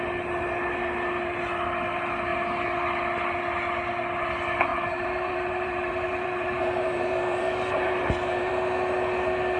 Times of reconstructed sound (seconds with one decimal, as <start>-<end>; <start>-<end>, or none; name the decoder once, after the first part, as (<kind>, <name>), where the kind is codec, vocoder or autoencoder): 4.7-8.5 (vocoder, BigVGAN v2)